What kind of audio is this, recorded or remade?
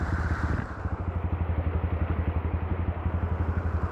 recorded